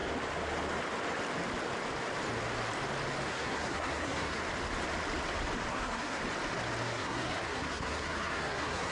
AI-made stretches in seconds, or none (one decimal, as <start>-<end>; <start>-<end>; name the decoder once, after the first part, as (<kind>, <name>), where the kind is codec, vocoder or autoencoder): 3.3-4.4 (codec, SNAC); 5.7-6.2; 6.8-8.9